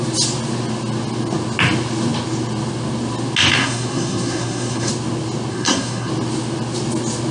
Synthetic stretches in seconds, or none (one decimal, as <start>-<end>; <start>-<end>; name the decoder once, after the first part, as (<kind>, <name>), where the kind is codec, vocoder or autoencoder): 3.6-4.9 (codec, SNAC); 5.5-6.1